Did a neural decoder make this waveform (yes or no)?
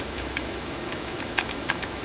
yes